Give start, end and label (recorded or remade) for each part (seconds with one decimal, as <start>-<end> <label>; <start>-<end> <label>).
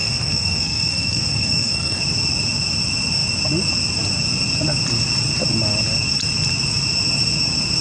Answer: 0.0-2.0 remade; 2.0-7.8 recorded